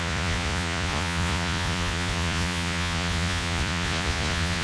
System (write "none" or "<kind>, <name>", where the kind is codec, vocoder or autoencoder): vocoder, Vocos